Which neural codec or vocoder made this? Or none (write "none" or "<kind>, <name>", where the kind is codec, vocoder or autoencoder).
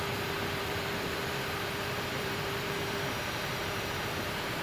vocoder, BigVGAN v2